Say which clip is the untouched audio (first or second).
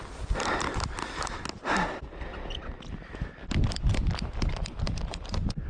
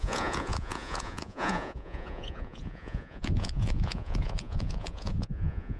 first